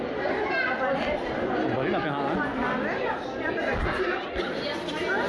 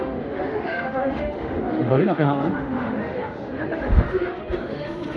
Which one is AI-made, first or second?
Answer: second